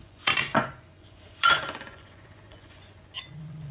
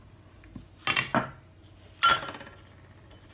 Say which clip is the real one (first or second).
second